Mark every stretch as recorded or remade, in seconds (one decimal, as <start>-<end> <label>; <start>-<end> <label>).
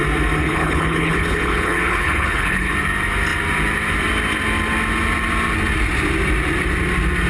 0.0-0.4 recorded; 0.4-2.7 remade; 2.7-7.3 recorded